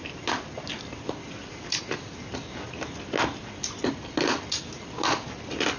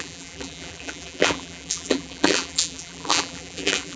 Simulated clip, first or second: second